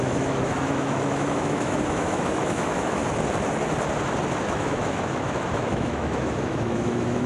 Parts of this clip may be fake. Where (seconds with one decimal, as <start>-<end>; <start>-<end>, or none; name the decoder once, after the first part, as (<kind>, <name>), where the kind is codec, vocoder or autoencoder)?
0.0-3.0 (autoencoder, DAC-VAE); 4.5-7.3